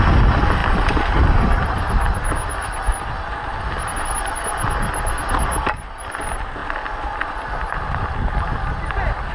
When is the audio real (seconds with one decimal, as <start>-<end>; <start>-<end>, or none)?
0.0-9.3